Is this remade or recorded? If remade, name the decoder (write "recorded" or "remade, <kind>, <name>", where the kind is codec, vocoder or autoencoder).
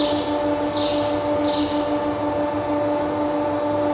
recorded